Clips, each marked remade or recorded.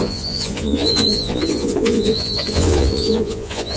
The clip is remade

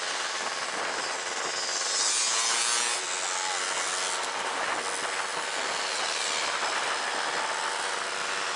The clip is recorded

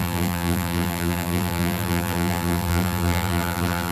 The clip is remade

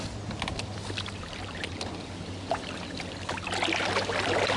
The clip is recorded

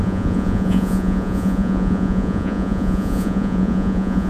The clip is remade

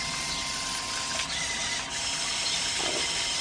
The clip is recorded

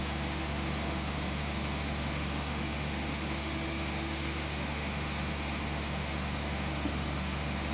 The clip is remade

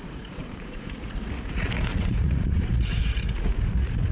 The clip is remade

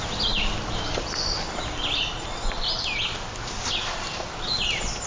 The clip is recorded